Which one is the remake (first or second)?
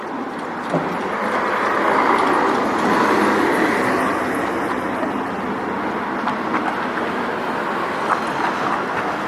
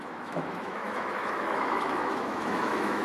second